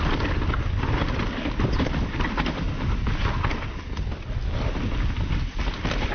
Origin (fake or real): real